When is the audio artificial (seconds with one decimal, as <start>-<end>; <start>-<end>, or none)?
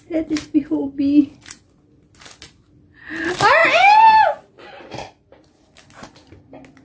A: none